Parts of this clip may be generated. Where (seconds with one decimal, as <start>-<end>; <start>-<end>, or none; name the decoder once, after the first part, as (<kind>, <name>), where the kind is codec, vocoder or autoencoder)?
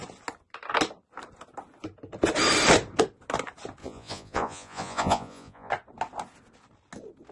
3.8-5.7 (vocoder, Vocos)